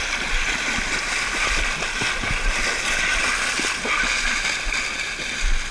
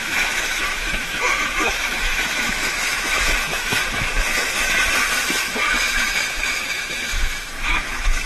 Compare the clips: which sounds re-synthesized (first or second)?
second